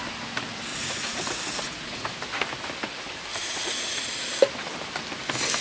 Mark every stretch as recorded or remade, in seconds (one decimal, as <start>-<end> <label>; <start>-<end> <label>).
0.0-0.7 recorded; 0.7-2.1 remade; 2.1-3.3 recorded; 3.3-4.1 remade; 4.1-5.6 recorded